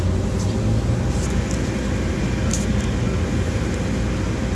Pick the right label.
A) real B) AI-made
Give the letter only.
A